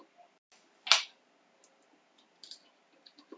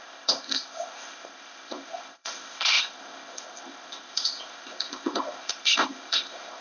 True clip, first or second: first